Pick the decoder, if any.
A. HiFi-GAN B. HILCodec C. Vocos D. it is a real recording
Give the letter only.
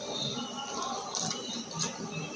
D